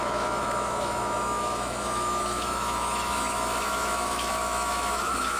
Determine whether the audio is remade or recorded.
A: remade